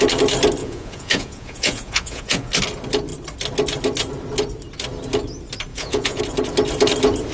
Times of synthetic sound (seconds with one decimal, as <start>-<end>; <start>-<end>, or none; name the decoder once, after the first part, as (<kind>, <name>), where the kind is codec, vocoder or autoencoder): 0.6-2.5 (vocoder, Vocos); 5.7-6.2